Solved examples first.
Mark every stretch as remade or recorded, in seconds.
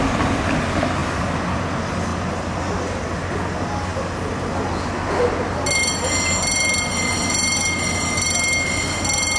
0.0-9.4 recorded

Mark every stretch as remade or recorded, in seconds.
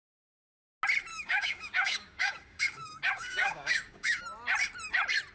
0.0-1.1 recorded; 1.1-4.2 remade; 4.2-5.3 recorded